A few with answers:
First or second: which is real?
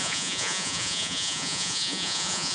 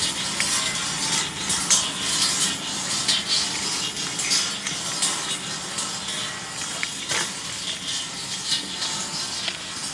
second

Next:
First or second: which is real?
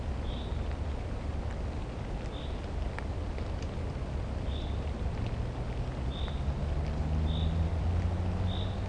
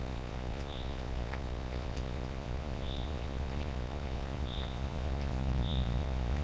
first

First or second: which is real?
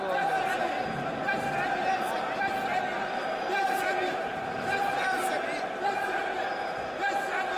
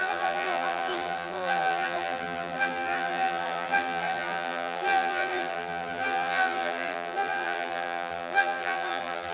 first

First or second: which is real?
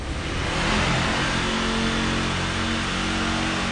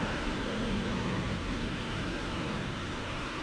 first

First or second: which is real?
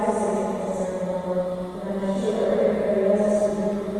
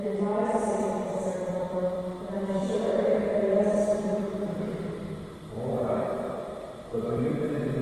first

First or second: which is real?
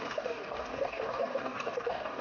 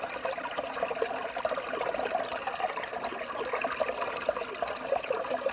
second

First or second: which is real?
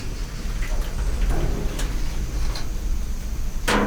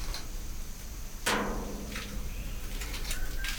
first